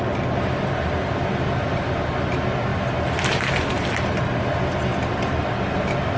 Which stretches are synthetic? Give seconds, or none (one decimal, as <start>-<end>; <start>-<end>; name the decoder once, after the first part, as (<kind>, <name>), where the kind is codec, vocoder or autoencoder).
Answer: none